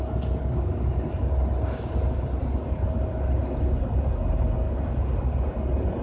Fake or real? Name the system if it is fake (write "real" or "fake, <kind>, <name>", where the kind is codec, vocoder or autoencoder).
real